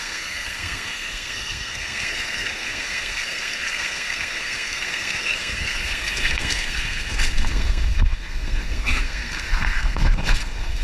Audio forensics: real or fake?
fake